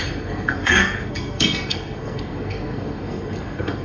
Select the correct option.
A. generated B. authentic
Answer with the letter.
A